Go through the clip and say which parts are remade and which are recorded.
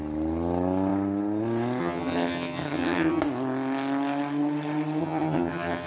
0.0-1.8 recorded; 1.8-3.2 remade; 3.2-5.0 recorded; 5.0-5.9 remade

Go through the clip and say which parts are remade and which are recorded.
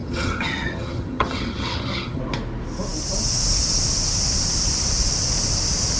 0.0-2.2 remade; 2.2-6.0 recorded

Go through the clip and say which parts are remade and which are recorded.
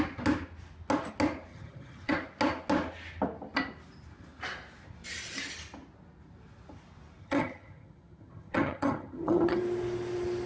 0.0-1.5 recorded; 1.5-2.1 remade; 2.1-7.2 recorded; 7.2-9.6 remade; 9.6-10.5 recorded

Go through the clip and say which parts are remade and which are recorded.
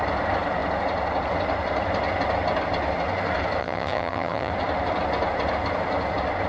0.0-3.6 recorded; 3.6-4.5 remade; 4.5-6.5 recorded